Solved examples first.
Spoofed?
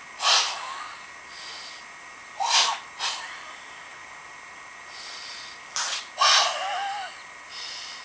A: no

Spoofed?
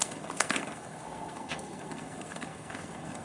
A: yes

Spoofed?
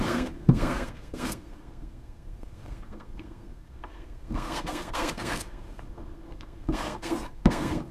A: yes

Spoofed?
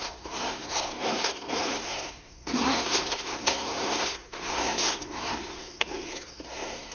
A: yes